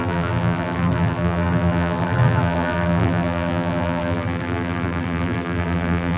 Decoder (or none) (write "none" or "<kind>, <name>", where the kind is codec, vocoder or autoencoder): vocoder, BigVGAN v2